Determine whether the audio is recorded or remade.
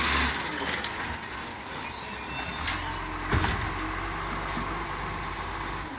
recorded